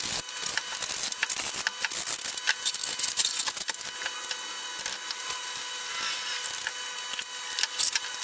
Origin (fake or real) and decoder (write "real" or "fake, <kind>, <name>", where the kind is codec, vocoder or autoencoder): real